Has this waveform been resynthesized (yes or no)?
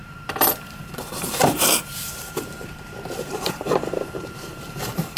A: yes